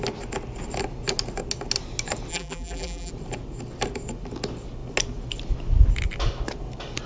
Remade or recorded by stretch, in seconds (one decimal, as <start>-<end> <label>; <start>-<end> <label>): 0.0-2.3 recorded; 2.3-3.1 remade; 3.1-7.1 recorded

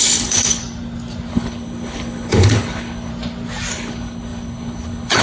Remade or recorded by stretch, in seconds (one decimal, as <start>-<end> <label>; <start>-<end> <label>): 0.0-0.6 remade; 0.6-1.3 recorded; 1.3-3.1 remade; 3.1-3.7 recorded; 3.7-5.2 remade